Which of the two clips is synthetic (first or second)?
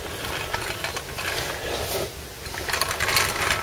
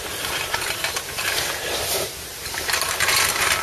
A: second